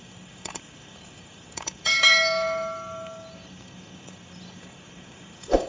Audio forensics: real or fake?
fake